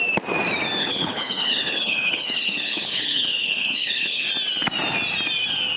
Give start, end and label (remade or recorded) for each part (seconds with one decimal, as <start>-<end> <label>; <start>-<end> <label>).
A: 0.0-0.8 recorded; 0.8-4.3 remade; 4.3-5.8 recorded